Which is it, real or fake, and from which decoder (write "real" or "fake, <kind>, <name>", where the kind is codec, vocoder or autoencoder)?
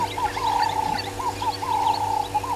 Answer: real